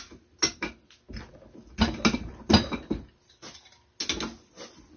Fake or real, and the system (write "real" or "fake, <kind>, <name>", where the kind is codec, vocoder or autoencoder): real